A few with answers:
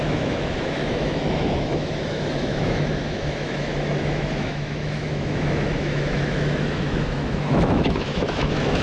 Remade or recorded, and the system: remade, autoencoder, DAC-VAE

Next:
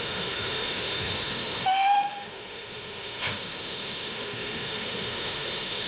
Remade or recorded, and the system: remade, autoencoder, DAC-VAE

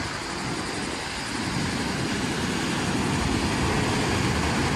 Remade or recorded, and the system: recorded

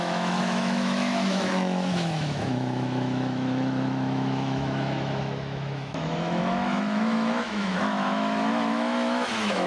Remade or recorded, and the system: remade, autoencoder, DAC-VAE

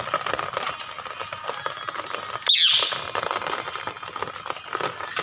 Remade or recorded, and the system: recorded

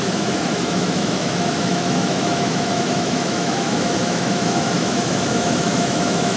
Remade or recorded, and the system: remade, autoencoder, DAC-VAE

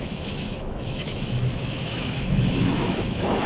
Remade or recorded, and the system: remade, autoencoder, DAC-VAE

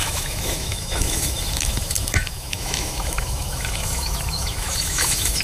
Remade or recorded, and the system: remade, autoencoder, DAC-VAE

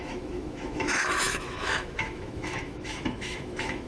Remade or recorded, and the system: remade, autoencoder, DAC-VAE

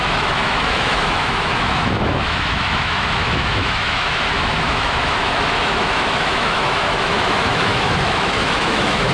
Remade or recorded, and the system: remade, autoencoder, DAC-VAE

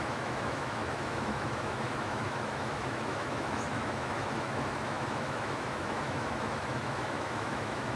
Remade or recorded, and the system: remade, autoencoder, DAC-VAE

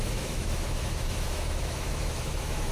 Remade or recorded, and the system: remade, autoencoder, DAC-VAE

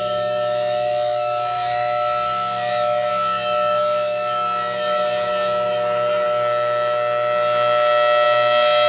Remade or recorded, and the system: remade, autoencoder, DAC-VAE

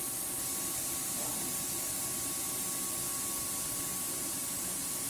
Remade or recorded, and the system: recorded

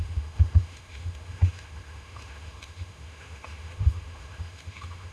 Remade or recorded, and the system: remade, autoencoder, DAC-VAE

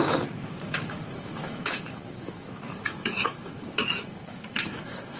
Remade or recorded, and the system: remade, autoencoder, DAC-VAE